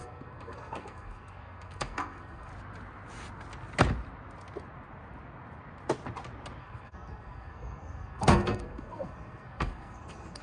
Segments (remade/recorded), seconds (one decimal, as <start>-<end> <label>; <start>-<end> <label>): 0.0-2.5 remade; 2.5-6.6 recorded; 6.6-10.4 remade